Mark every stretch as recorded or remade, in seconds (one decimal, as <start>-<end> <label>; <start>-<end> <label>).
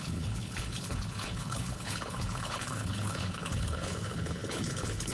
0.0-5.1 remade